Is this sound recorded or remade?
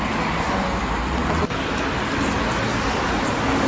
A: recorded